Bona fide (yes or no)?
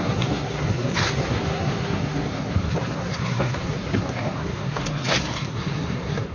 no